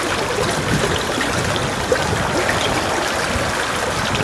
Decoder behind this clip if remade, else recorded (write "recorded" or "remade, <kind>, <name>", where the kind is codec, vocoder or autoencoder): recorded